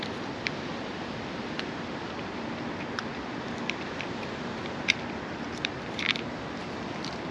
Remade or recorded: remade